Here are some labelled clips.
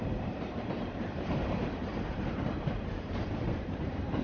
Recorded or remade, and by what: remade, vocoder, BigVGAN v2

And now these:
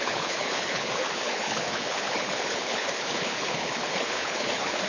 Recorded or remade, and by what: remade, codec, HILCodec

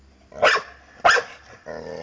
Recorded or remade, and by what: recorded